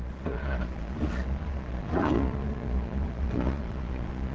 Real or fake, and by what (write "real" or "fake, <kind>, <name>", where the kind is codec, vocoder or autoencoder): fake, vocoder, Vocos